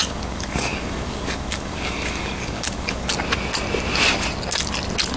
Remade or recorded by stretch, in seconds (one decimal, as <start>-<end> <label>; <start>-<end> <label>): 0.0-3.1 remade; 3.1-5.2 recorded